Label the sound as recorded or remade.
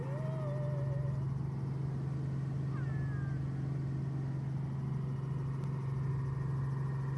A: recorded